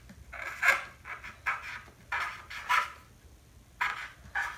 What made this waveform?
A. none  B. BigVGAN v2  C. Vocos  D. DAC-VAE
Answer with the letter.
A